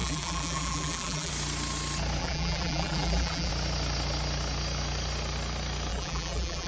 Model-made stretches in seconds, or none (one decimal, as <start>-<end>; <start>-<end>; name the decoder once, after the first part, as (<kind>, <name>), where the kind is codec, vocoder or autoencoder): 0.0-1.3 (vocoder, BigVGAN v2); 2.2-3.5; 5.9-6.7